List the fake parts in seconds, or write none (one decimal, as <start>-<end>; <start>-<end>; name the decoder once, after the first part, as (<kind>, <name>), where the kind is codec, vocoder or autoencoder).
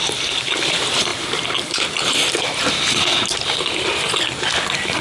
none